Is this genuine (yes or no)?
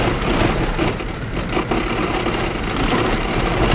yes